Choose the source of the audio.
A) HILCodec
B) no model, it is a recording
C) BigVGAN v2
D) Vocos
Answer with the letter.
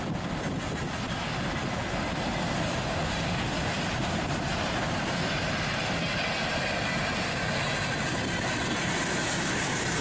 B